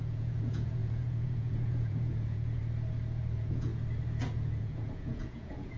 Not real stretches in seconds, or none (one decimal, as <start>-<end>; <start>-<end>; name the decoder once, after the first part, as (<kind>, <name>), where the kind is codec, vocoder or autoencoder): 0.0-2.6 (vocoder, Vocos); 3.2-3.7; 4.3-5.8